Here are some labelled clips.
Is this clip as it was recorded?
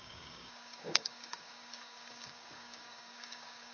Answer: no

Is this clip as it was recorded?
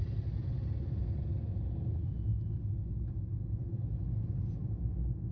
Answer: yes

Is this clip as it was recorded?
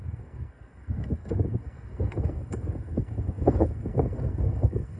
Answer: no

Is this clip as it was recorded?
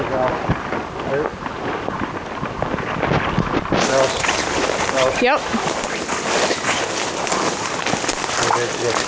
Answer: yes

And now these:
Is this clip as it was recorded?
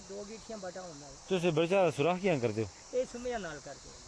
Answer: yes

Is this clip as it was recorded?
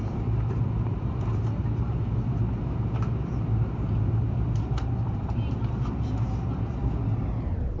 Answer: no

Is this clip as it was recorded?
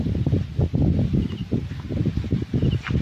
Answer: yes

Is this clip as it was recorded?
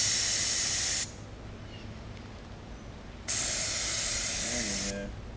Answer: yes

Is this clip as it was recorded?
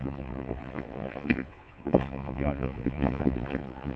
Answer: no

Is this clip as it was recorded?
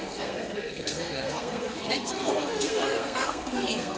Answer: no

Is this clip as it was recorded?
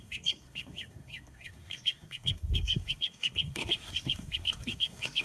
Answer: no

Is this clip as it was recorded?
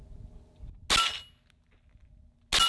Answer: yes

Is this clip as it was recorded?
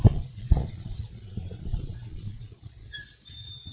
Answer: no